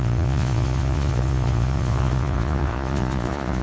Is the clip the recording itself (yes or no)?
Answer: no